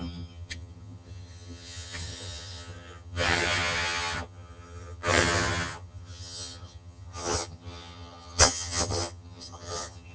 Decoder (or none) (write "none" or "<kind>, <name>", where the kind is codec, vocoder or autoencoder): vocoder, HiFi-GAN